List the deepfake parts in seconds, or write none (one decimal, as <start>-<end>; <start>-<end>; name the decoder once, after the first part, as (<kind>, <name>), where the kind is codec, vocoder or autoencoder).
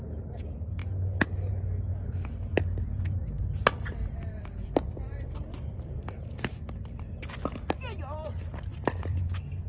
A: 1.9-7.0 (vocoder, BigVGAN v2); 8.7-9.2